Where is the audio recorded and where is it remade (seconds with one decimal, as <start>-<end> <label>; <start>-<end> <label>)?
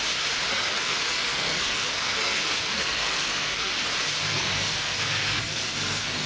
0.0-0.5 recorded; 0.5-3.7 remade; 3.7-4.3 recorded; 4.3-6.3 remade